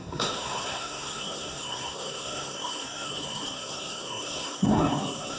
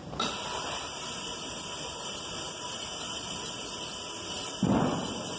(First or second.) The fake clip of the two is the first